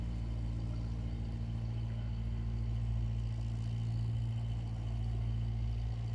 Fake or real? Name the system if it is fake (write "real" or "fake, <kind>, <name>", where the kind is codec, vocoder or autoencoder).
real